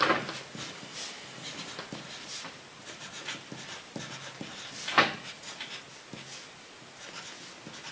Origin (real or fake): real